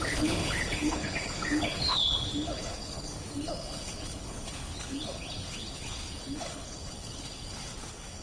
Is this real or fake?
fake